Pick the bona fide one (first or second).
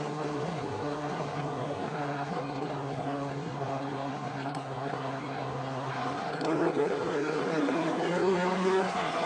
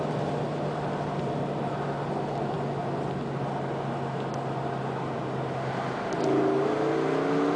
second